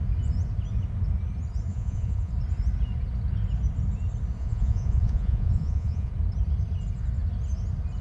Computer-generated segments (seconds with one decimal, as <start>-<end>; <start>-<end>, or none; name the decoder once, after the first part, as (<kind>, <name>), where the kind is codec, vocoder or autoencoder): 1.7-2.3 (vocoder, Vocos); 4.4-6.1